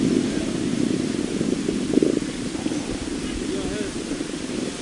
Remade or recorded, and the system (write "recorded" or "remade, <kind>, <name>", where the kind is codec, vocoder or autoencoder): recorded